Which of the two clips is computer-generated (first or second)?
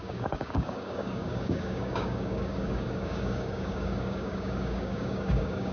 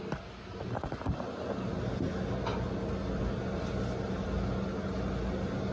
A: first